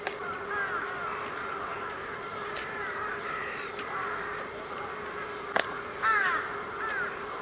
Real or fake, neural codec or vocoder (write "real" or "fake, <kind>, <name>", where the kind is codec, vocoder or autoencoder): real